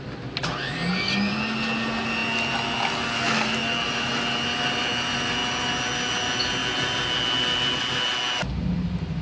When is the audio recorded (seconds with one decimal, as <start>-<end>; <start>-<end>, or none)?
0.0-9.2